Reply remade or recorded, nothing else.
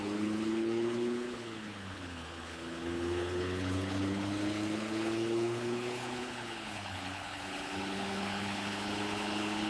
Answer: remade